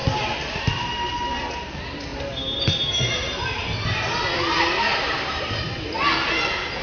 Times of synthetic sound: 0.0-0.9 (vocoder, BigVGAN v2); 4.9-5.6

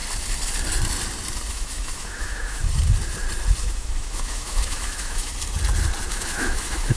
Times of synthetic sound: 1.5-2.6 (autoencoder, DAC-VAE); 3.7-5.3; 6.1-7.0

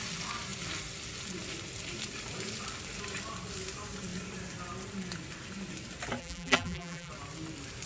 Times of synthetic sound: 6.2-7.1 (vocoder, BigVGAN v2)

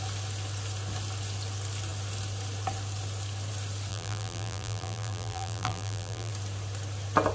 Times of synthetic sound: 3.9-6.3 (vocoder, BigVGAN v2)

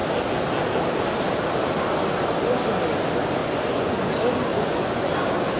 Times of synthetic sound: 3.4-4.1 (vocoder, Vocos); 4.5-5.1

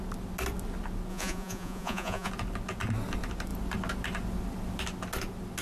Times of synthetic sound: 1.1-2.3 (vocoder, Vocos)